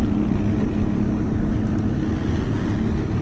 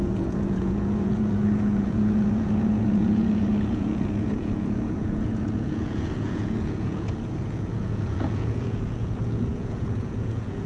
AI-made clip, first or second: second